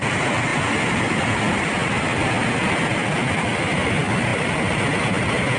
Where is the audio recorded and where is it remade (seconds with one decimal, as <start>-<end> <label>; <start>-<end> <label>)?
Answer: 0.0-5.6 recorded